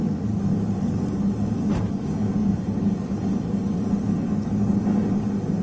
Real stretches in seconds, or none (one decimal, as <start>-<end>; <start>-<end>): 0.0-5.6